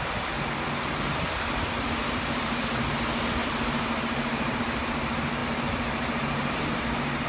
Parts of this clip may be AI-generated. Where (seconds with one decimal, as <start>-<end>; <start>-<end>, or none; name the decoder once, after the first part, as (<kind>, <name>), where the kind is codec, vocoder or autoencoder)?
2.0-2.6 (vocoder, BigVGAN v2); 3.4-4.6; 5.4-6.6